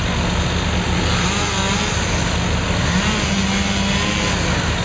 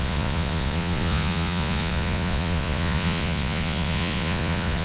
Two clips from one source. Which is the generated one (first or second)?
second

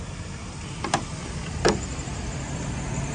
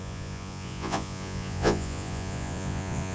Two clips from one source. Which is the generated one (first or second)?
second